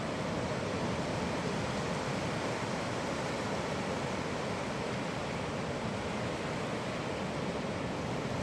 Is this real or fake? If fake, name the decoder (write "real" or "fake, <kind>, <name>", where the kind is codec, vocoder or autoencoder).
real